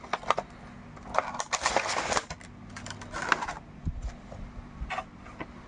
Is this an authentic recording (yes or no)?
yes